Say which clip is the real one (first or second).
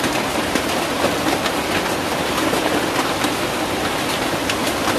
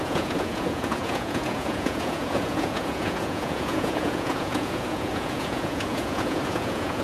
first